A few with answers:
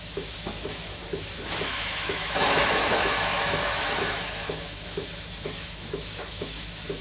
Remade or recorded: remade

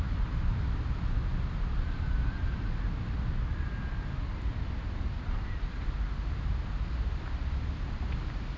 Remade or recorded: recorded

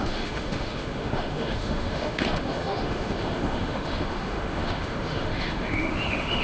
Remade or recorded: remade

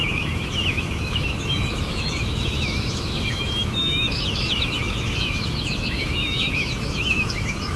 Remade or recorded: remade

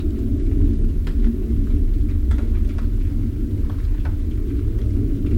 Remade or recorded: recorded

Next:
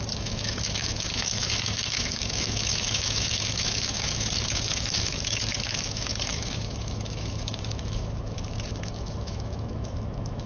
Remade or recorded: remade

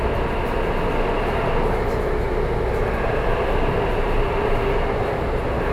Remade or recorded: recorded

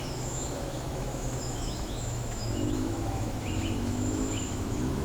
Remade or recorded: remade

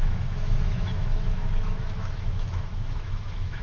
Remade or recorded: remade